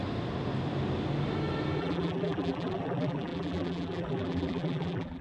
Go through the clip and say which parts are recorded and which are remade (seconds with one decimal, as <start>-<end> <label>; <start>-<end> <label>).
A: 0.0-1.8 recorded; 1.8-5.2 remade